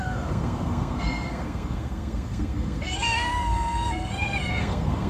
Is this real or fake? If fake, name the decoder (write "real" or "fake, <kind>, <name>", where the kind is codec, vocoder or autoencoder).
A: fake, codec, SNAC